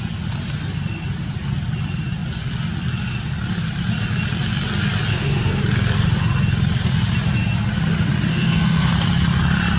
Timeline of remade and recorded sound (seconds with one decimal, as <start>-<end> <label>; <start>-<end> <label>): 0.0-5.1 recorded; 5.1-5.6 remade; 5.6-8.3 recorded; 8.3-8.9 remade; 8.9-9.8 recorded